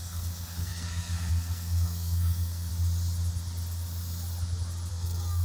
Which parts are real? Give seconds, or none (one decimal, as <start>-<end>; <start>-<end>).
2.7-4.9